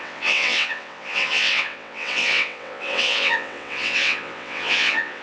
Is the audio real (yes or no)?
no